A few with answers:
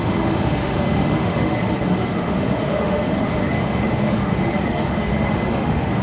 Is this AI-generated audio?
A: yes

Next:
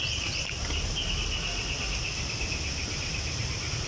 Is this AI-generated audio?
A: yes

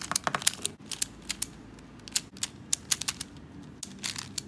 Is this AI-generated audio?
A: no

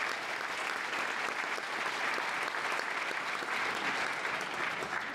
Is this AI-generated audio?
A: no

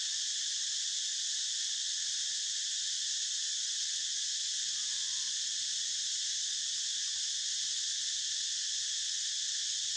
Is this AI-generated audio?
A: no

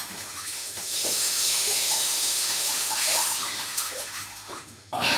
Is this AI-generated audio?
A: yes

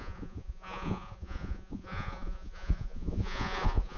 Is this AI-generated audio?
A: yes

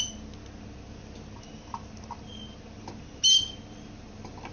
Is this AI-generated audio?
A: no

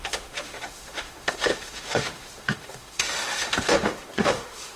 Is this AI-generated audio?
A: yes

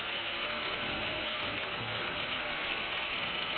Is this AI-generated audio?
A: yes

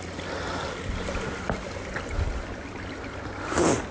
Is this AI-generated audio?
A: no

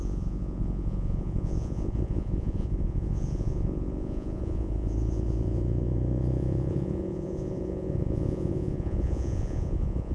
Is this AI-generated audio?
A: yes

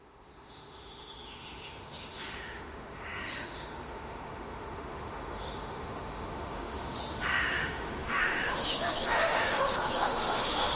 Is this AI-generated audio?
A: yes